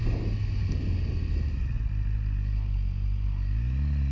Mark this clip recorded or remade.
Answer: recorded